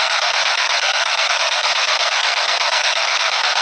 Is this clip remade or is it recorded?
remade